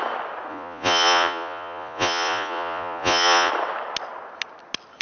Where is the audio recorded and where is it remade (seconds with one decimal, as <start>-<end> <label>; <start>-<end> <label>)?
0.0-0.5 recorded; 0.5-3.5 remade; 3.5-5.0 recorded